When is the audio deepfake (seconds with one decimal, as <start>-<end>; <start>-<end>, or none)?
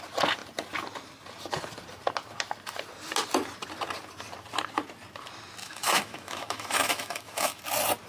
5.6-7.6